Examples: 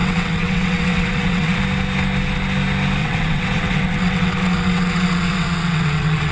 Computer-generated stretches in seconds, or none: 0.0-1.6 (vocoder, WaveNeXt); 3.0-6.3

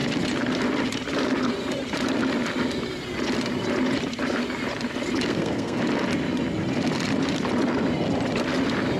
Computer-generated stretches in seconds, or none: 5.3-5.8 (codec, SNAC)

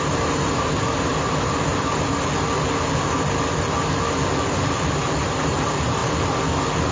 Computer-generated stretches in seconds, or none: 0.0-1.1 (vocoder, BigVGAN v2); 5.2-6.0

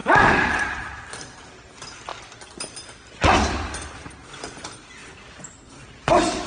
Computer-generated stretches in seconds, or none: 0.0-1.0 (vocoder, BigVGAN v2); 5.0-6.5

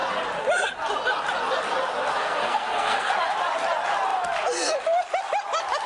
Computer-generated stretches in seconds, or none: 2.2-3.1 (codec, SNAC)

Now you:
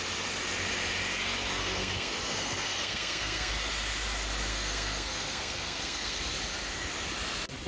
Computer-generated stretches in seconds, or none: 1.6-3.5 (codec, SNAC); 4.5-6.2

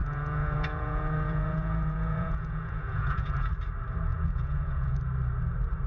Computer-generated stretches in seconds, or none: 0.0-3.5 (vocoder, Vocos); 4.1-5.0

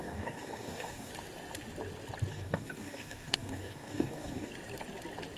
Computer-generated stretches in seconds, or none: 0.0-1.1 (codec, DAC); 2.3-4.5